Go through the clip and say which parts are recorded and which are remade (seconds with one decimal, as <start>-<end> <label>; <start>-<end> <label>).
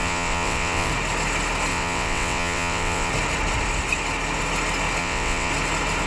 0.0-0.9 remade; 0.9-1.7 recorded; 1.7-3.1 remade; 3.1-5.0 recorded; 5.0-5.5 remade; 5.5-6.1 recorded